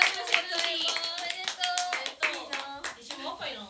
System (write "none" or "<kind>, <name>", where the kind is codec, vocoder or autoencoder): none